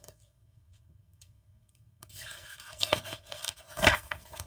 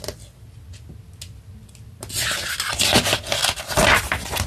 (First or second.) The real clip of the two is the second